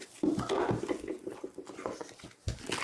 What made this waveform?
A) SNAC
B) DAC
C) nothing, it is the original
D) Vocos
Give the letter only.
C